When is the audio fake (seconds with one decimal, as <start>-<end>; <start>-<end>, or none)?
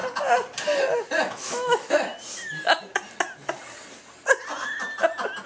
1.3-2.1